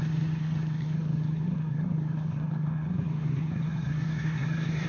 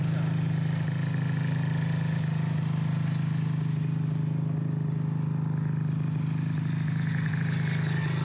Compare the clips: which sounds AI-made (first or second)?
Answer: first